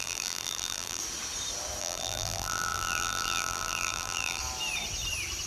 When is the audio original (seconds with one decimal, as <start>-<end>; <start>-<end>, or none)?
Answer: 1.0-1.8; 4.4-5.5

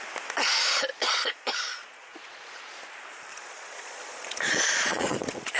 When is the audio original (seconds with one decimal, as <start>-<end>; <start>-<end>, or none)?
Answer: 0.0-0.9; 2.6-3.3

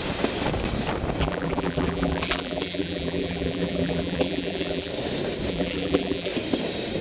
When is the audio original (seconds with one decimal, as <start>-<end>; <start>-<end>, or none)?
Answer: 0.0-1.2; 4.9-5.5; 6.3-7.0

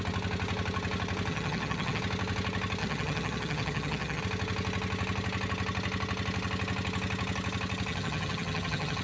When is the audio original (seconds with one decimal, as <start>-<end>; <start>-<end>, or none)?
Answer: 0.0-1.3; 2.0-2.8; 4.2-7.9